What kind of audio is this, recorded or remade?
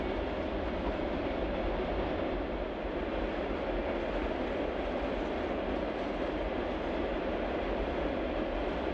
recorded